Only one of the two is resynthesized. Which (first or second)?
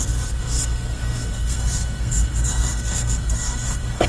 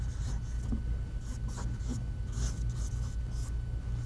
first